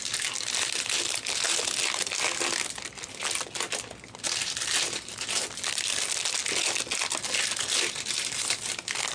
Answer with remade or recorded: recorded